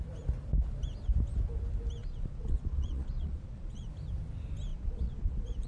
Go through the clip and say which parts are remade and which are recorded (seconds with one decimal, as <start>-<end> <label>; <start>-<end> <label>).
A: 0.0-2.0 recorded; 2.0-3.9 remade; 3.9-4.7 recorded; 4.7-5.7 remade